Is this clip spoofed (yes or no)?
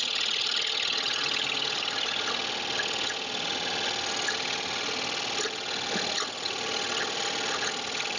no